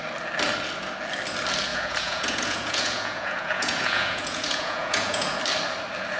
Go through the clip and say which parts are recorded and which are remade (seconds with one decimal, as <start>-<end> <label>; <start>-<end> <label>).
0.0-1.7 recorded; 1.7-5.4 remade; 5.4-6.2 recorded